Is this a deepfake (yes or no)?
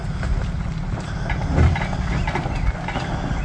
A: no